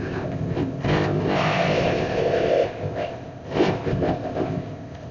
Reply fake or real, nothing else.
fake